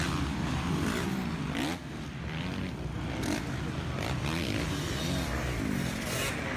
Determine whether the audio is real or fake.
real